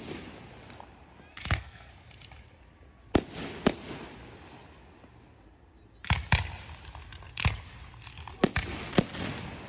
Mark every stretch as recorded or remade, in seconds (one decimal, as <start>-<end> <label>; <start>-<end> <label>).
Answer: 0.0-1.3 recorded; 1.3-1.9 remade; 1.9-9.7 recorded